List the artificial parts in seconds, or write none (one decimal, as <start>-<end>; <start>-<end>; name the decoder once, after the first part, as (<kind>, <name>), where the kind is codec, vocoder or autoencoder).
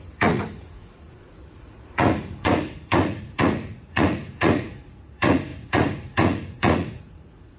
0.0-7.6 (vocoder, Vocos)